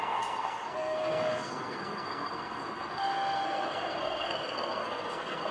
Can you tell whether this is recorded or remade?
remade